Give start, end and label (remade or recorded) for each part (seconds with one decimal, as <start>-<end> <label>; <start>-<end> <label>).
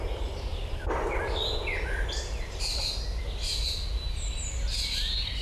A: 0.0-0.5 recorded; 0.5-2.6 remade; 2.6-4.7 recorded; 4.7-5.4 remade